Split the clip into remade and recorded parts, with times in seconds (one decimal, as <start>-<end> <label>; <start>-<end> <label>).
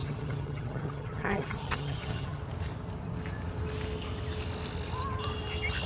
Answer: 0.0-2.4 remade; 2.4-5.9 recorded